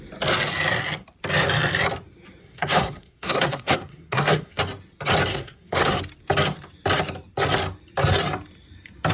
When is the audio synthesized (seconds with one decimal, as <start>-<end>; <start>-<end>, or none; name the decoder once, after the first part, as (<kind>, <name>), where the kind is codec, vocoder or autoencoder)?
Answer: 2.4-4.6 (codec, SNAC); 5.3-6.0